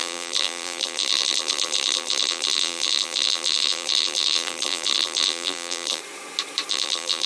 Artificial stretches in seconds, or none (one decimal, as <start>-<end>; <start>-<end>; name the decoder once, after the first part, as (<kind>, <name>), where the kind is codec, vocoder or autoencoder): 0.0-6.0 (vocoder, BigVGAN v2); 6.7-7.3